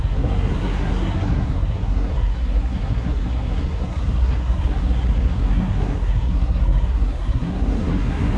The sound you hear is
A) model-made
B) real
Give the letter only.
A